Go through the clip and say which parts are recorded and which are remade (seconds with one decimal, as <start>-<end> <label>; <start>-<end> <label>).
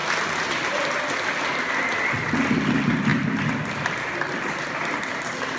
0.0-5.6 recorded